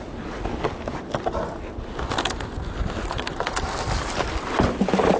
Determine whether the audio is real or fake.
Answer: real